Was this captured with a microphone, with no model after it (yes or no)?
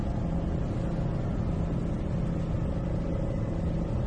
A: yes